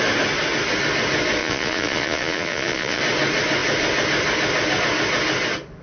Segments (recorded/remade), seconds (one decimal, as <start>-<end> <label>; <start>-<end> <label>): 0.0-1.4 recorded; 1.4-3.0 remade; 3.0-5.8 recorded